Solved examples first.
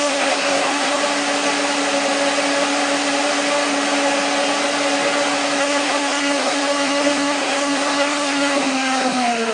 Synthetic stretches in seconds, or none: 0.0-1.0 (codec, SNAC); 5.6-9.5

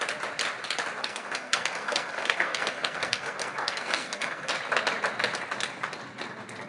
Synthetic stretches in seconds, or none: 1.0-4.5 (codec, SNAC)